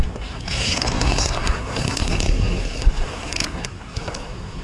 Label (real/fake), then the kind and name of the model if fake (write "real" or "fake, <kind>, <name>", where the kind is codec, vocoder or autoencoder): fake, codec, SNAC